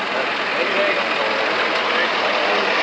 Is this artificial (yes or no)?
no